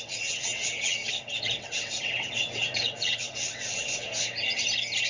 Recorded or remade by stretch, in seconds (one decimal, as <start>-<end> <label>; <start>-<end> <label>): 0.0-4.1 remade; 4.1-5.1 recorded